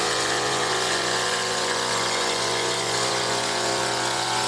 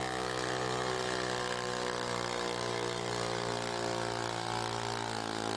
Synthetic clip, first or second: first